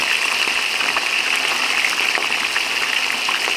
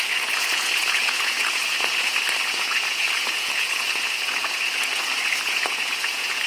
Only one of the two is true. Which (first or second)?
first